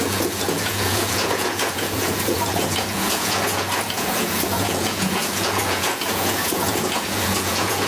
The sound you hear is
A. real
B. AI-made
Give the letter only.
B